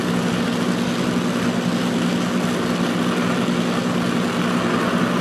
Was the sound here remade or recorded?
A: recorded